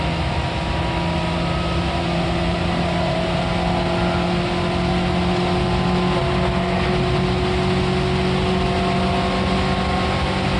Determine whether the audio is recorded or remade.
recorded